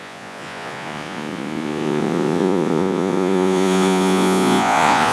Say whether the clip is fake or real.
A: fake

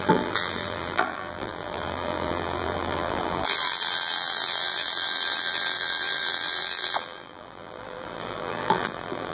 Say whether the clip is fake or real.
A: fake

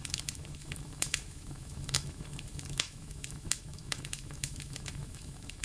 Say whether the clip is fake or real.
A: fake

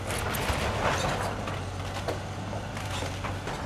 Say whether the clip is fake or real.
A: real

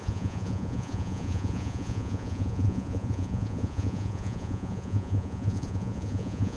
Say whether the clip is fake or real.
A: fake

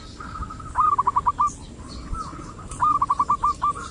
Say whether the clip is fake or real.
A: real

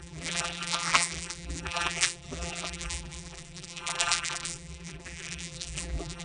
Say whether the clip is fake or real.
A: fake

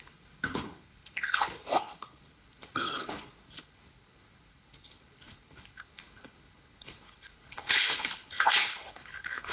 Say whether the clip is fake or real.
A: fake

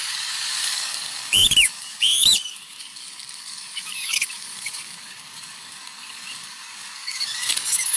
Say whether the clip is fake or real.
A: fake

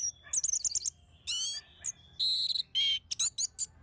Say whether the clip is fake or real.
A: real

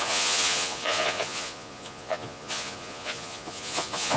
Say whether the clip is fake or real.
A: fake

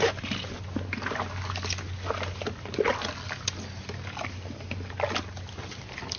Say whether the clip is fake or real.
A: real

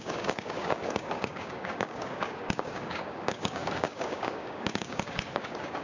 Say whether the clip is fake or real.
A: fake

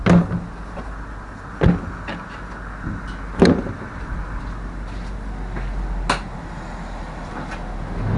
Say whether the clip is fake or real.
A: real